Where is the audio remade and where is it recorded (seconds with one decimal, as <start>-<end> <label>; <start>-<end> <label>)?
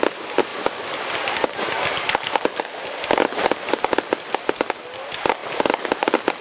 0.0-6.4 recorded